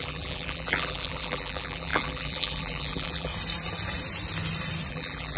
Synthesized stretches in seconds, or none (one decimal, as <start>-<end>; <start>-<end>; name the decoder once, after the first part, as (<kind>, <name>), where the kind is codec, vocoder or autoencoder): 0.0-3.3 (vocoder, BigVGAN v2); 4.9-5.4